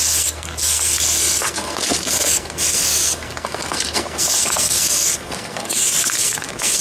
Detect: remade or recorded remade